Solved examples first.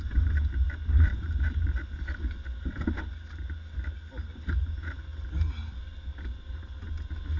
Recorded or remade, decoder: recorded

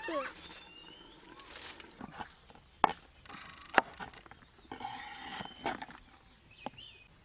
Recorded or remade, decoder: recorded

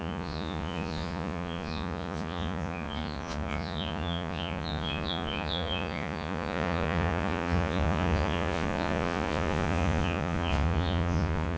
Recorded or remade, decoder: remade, vocoder, Vocos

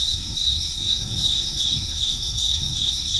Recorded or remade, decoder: remade, codec, SNAC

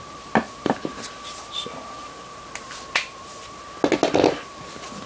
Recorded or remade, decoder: recorded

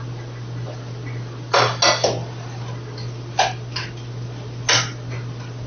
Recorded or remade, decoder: recorded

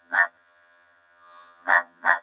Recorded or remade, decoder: remade, vocoder, HiFi-GAN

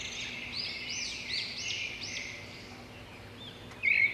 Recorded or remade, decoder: recorded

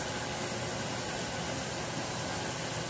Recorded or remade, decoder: recorded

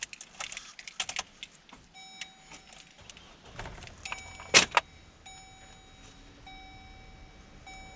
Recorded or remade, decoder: recorded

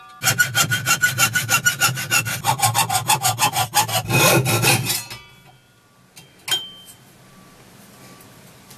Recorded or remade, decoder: recorded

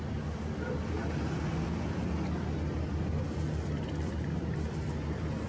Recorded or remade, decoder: recorded